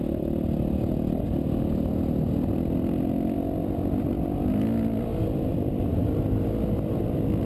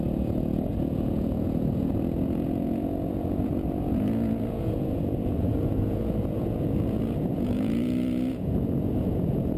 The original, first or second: first